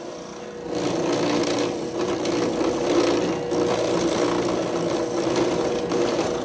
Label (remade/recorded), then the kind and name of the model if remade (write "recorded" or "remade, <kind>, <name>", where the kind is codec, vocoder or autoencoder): recorded